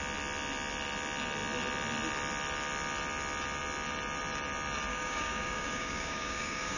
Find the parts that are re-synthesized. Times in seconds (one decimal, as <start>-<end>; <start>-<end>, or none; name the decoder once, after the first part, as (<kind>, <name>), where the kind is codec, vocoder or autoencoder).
4.9-6.8 (codec, DAC)